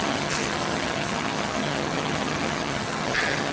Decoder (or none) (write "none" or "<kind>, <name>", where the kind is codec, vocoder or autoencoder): vocoder, HiFi-GAN